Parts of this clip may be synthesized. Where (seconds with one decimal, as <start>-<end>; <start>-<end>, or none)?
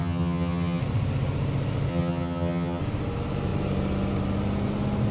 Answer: 0.0-0.8; 1.9-2.8